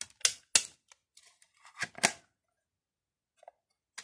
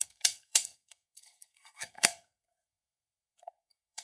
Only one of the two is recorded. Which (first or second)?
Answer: first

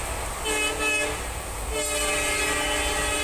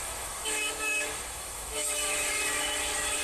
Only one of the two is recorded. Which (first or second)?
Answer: first